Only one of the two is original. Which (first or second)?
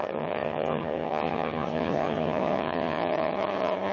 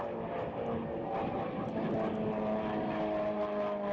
second